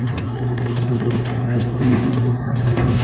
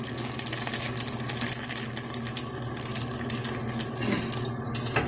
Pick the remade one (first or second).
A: first